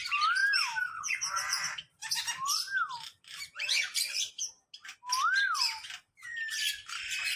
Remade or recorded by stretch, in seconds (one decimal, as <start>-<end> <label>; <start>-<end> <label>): 0.0-0.4 recorded; 0.4-4.3 remade; 4.3-7.4 recorded